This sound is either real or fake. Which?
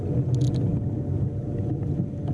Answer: real